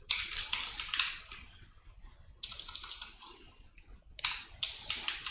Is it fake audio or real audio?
real